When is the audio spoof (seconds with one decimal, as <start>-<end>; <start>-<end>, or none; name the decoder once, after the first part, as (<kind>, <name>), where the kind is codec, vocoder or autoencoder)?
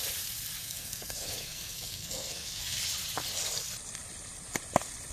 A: 0.6-2.8 (codec, SNAC)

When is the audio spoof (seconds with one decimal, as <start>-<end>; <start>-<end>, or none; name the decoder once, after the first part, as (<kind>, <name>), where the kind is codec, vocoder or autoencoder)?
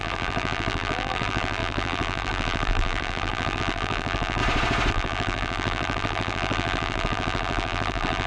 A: 0.0-4.4 (vocoder, BigVGAN v2); 4.9-8.3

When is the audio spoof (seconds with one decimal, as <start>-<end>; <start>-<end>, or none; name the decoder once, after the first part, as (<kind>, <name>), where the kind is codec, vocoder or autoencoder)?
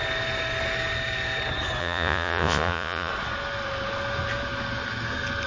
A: 1.8-3.1 (vocoder, Vocos)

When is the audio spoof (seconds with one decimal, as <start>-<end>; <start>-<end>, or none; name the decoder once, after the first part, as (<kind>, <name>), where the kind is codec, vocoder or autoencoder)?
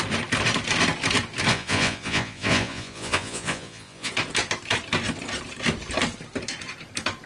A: 1.5-4.1 (vocoder, Vocos)